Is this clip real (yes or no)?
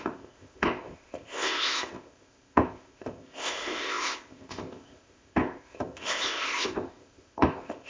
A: no